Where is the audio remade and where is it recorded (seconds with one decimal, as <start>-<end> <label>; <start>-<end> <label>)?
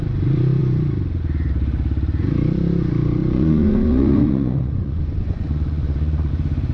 0.0-3.2 recorded; 3.2-6.3 remade; 6.3-6.7 recorded